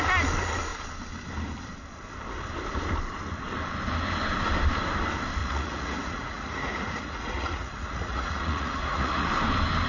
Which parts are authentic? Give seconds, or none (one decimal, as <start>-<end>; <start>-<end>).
0.0-5.4; 9.3-9.9